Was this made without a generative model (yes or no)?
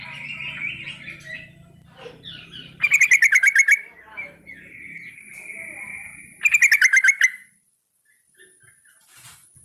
yes